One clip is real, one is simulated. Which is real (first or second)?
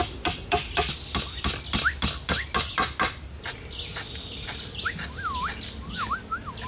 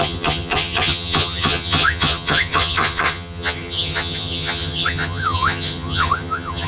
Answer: first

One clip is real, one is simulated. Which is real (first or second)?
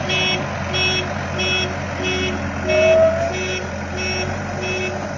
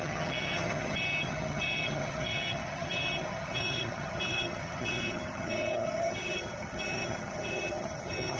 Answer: first